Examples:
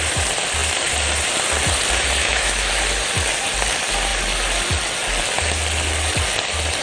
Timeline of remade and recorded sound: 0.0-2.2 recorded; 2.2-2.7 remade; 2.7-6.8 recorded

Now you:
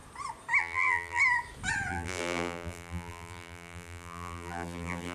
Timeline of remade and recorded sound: 0.0-0.6 recorded; 0.6-1.2 remade; 1.2-1.9 recorded; 1.9-5.1 remade